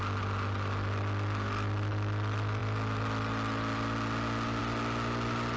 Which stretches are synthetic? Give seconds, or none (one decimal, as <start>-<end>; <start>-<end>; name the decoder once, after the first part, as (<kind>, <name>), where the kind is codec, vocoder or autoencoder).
none